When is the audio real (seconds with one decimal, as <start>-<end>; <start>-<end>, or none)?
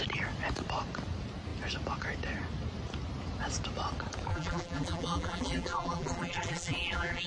0.0-4.3